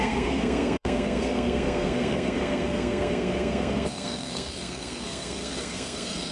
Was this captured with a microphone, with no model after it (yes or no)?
no